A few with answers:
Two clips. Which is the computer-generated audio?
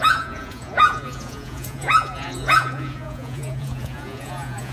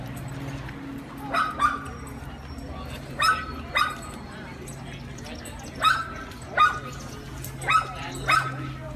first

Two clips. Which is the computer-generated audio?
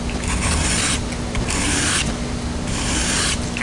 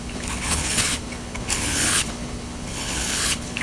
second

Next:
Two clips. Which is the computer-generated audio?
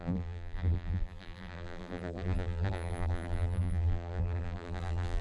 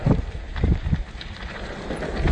first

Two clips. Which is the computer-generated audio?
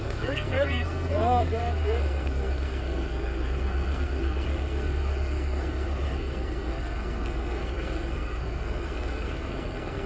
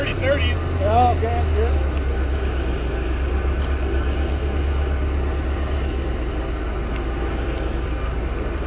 first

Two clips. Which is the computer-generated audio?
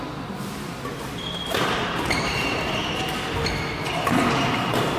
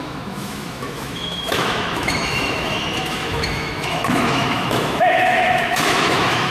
second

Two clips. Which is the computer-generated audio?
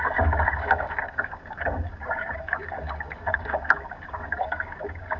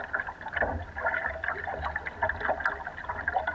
first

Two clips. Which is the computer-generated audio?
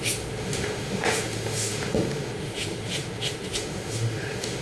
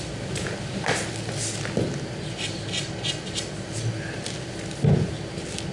first